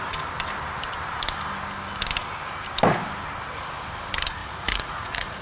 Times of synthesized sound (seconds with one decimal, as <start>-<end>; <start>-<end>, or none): 4.4-5.4